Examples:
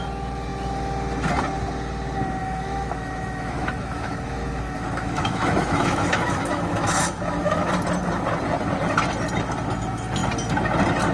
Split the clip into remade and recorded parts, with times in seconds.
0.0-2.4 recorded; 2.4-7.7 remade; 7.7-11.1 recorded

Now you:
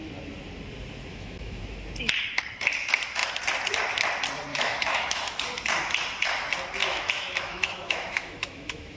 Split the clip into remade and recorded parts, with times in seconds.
0.0-1.1 recorded; 1.1-1.6 remade; 1.6-4.5 recorded; 4.5-5.4 remade; 5.4-6.8 recorded; 6.8-9.0 remade

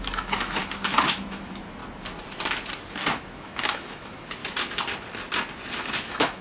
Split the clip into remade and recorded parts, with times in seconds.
0.0-0.6 remade; 0.6-1.1 recorded; 1.1-1.8 remade; 1.8-2.9 recorded; 2.9-4.4 remade; 4.4-5.8 recorded; 5.8-6.4 remade

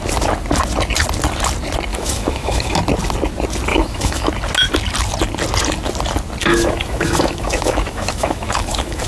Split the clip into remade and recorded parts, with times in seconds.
0.0-1.9 recorded; 1.9-2.8 remade; 2.8-3.7 recorded; 3.7-4.3 remade; 4.3-6.4 recorded; 6.4-9.1 remade

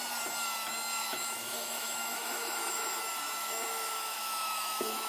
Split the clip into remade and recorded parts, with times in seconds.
0.0-1.0 recorded; 1.0-3.0 remade; 3.0-3.4 recorded; 3.4-5.1 remade

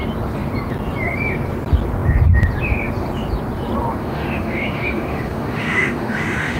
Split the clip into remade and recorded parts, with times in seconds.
0.0-4.0 recorded; 4.0-6.6 remade

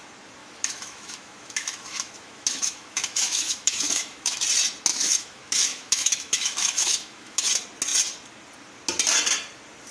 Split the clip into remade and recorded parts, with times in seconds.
0.0-0.4 recorded; 0.4-4.4 remade; 4.4-4.9 recorded; 4.9-7.5 remade; 7.5-9.9 recorded

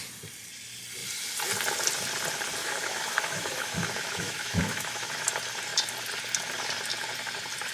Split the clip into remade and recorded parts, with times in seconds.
0.0-2.6 recorded; 2.6-5.3 remade; 5.3-7.7 recorded